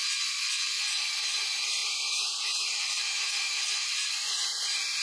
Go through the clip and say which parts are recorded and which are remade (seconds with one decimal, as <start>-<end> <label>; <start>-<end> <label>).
0.0-1.3 recorded; 1.3-5.0 remade